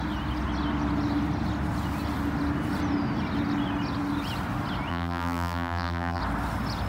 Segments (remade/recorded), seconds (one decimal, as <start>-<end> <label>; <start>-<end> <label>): 0.0-4.9 recorded; 4.9-6.2 remade; 6.2-6.9 recorded